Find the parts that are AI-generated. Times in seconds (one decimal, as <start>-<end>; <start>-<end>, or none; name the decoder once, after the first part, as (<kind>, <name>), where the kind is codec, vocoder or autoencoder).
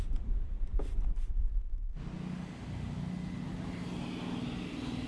none